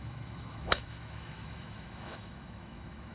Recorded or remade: remade